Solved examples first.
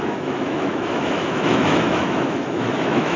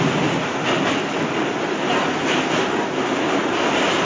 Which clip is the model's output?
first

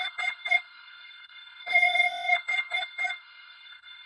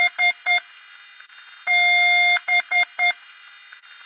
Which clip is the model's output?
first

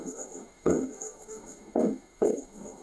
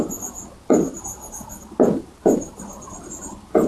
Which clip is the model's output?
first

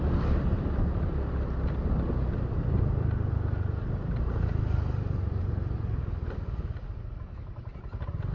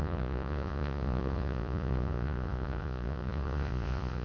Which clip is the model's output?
second